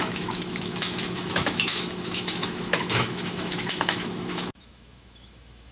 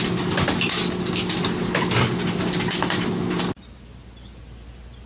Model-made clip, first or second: first